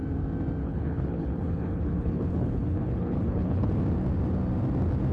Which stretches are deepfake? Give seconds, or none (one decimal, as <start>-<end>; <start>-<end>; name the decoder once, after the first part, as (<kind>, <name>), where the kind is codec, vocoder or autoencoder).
0.6-3.7 (codec, HILCodec)